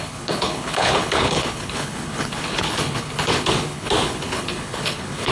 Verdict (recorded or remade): remade